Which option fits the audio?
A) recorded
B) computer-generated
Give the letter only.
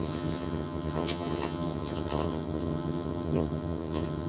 B